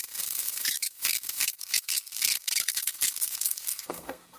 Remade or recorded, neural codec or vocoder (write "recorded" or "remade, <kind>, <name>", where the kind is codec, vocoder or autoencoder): remade, codec, SNAC